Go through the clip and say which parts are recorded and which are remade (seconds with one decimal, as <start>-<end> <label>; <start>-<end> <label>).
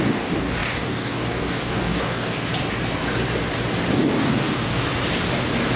0.0-2.5 remade; 2.5-3.9 recorded; 3.9-4.8 remade; 4.8-5.8 recorded